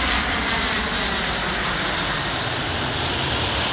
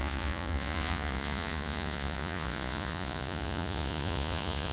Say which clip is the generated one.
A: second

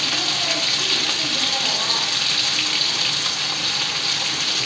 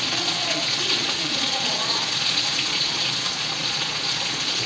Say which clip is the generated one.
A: second